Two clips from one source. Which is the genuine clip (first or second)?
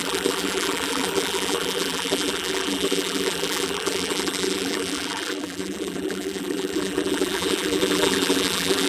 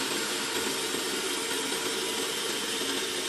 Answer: second